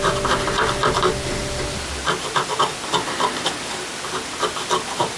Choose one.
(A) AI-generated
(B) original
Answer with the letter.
B